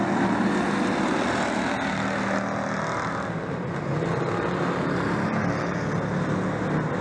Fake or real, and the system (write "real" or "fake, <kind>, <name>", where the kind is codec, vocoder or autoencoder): real